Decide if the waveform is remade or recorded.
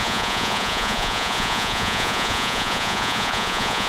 remade